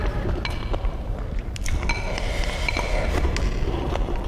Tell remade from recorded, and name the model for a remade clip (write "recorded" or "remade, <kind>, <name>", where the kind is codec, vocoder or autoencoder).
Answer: recorded